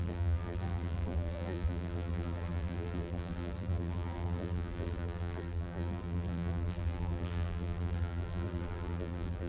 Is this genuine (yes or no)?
no